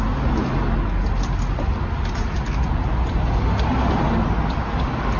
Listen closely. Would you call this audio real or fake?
real